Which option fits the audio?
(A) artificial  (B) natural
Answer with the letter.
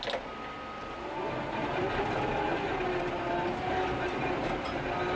B